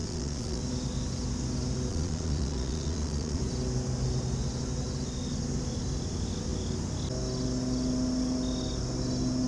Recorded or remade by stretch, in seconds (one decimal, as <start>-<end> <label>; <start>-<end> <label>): 0.0-0.6 remade; 0.6-1.9 recorded; 1.9-3.4 remade; 3.4-9.5 recorded